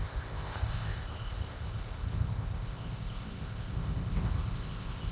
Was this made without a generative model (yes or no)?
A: no